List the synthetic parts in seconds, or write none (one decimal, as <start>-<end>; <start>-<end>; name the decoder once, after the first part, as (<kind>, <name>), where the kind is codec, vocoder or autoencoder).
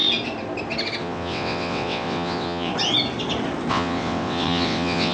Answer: 1.0-2.7 (vocoder, WaveNeXt); 3.7-5.1